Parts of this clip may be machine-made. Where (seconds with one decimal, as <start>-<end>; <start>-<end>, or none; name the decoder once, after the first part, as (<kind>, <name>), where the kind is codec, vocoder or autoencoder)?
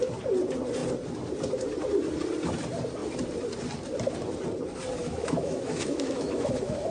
5.0-6.9 (autoencoder, DAC-VAE)